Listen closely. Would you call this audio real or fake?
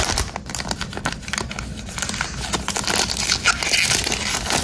real